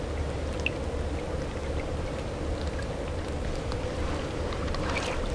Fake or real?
real